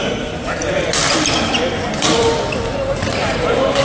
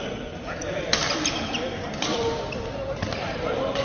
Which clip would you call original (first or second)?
first